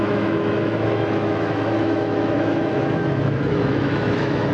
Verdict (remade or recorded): remade